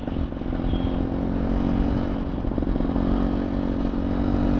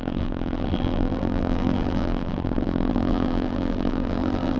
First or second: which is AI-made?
second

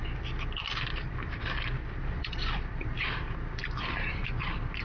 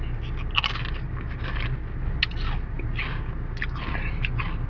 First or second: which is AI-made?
first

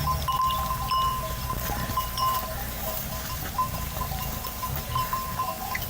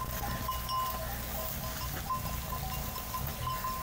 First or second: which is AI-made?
first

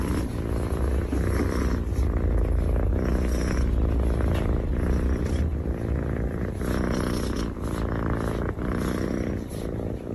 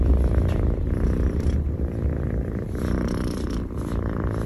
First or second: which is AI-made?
second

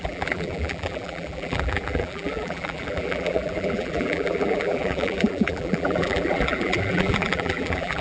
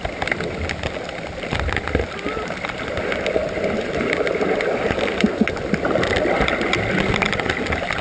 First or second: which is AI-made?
first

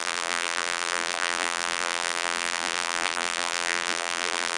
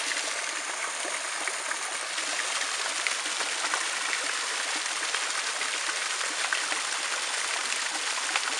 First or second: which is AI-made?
first